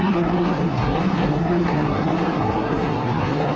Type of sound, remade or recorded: remade